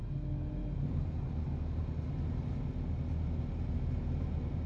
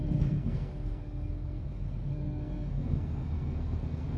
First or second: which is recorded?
first